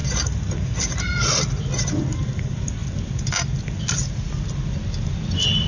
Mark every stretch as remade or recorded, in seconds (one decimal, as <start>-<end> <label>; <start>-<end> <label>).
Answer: 0.0-5.7 recorded